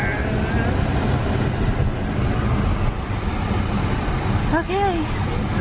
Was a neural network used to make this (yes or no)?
no